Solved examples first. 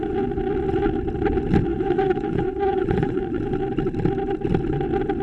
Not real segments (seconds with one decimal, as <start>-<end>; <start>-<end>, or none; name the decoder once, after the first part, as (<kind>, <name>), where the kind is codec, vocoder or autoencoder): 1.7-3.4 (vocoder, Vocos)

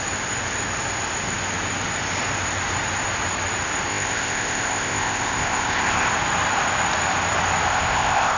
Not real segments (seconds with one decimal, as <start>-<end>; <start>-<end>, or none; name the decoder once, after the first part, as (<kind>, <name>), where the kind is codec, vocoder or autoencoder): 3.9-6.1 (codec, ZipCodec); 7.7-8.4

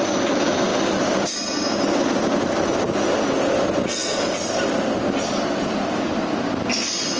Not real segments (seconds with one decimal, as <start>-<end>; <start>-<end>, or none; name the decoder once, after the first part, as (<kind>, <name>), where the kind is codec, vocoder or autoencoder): none